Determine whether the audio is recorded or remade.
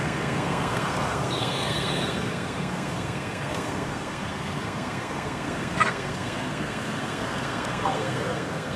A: remade